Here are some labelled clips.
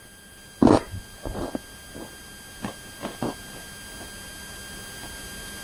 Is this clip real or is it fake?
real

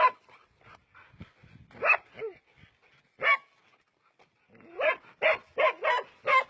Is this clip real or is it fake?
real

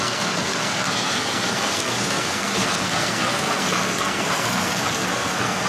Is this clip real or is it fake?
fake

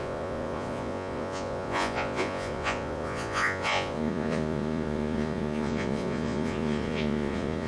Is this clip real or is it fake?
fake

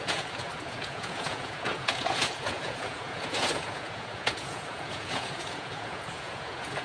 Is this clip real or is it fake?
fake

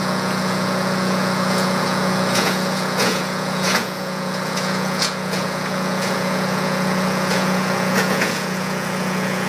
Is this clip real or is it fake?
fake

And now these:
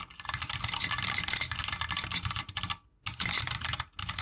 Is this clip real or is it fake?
real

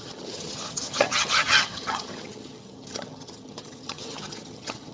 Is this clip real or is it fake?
fake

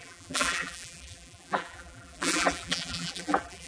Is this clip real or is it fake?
fake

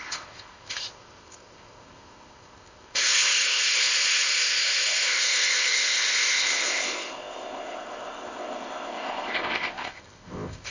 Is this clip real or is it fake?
fake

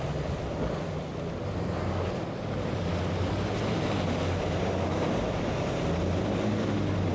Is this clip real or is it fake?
real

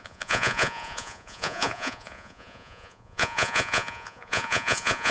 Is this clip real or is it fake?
fake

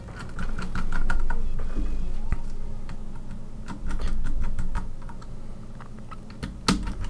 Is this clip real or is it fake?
real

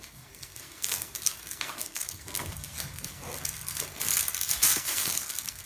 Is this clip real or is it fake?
fake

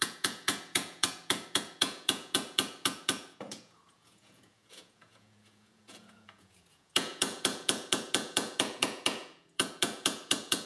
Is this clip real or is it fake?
fake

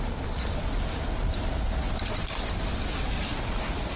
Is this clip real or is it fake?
real